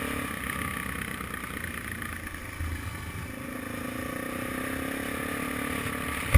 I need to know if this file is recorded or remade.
recorded